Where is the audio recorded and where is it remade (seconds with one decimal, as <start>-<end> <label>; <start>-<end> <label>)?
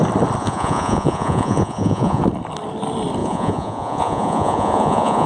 0.0-0.4 recorded; 0.4-2.2 remade; 2.2-3.2 recorded; 3.2-5.3 remade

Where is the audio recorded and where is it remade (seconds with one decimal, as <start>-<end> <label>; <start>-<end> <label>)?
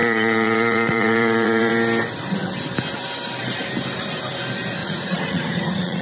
0.0-1.7 remade; 1.7-4.8 recorded; 4.8-6.0 remade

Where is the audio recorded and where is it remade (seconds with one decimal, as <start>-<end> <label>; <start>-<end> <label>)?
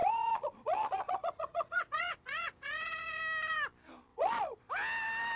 0.0-3.2 remade; 3.2-4.1 recorded; 4.1-4.7 remade; 4.7-5.4 recorded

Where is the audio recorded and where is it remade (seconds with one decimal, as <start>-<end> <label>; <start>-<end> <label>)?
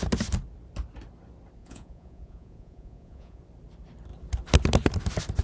0.0-1.6 recorded; 1.6-3.4 remade; 3.4-5.4 recorded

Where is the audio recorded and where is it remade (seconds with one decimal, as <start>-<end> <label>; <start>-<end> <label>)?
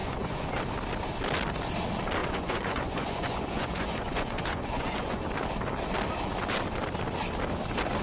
0.0-0.5 remade; 0.5-2.2 recorded; 2.2-5.2 remade; 5.2-8.0 recorded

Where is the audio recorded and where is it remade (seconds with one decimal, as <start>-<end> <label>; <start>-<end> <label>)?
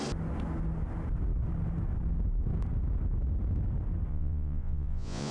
0.0-4.1 recorded; 4.1-5.3 remade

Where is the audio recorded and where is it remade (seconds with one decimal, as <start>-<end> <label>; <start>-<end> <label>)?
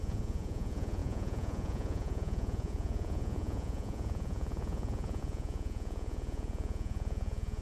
0.0-7.6 remade